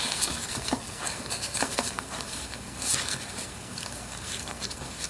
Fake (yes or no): yes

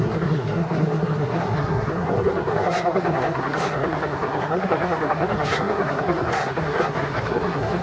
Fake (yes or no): yes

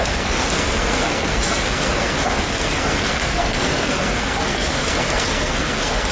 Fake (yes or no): yes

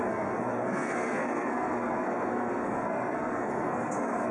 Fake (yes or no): yes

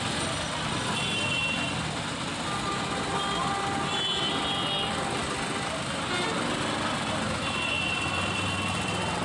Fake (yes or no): no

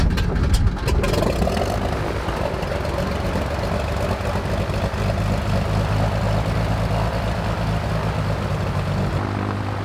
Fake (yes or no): no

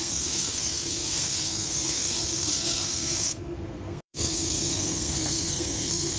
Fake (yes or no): yes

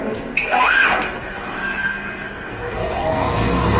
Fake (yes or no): yes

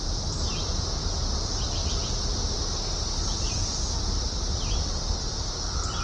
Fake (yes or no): no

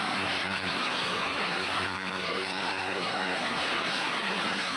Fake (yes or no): yes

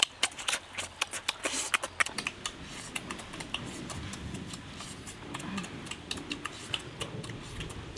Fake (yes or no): no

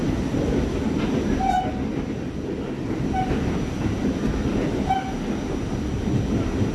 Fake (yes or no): no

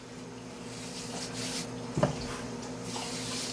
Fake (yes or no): no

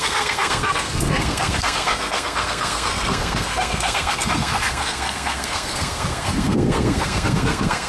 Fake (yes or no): yes